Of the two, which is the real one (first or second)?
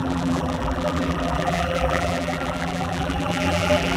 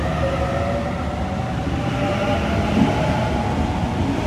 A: second